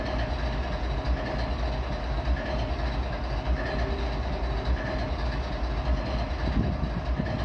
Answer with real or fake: real